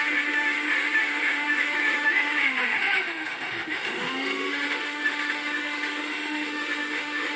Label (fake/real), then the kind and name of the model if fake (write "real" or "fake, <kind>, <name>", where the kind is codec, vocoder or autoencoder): fake, autoencoder, DAC-VAE